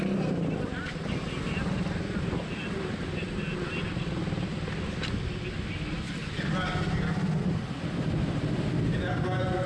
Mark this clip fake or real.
real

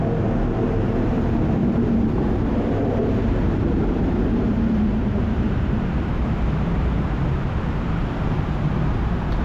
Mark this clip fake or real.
fake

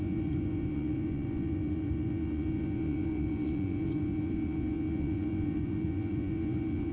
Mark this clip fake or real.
fake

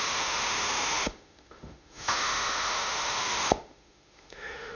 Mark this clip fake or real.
fake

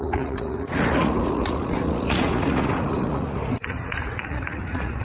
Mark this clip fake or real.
fake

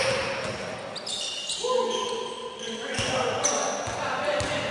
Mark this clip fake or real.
real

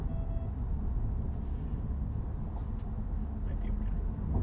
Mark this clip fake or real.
real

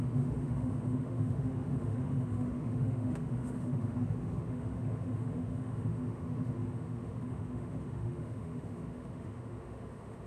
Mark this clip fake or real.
fake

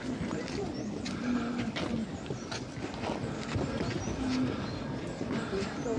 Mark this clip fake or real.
real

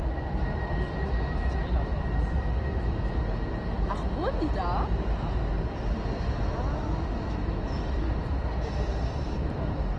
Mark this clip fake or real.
real